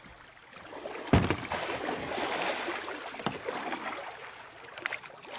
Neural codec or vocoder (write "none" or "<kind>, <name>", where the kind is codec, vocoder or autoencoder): none